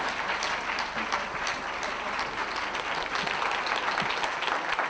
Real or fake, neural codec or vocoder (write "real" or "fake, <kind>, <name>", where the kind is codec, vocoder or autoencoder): real